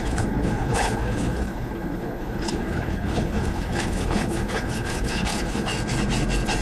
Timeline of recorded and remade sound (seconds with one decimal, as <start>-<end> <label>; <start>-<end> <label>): 0.0-5.7 remade; 5.7-6.6 recorded